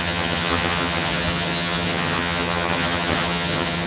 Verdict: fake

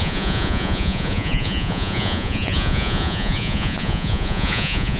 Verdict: fake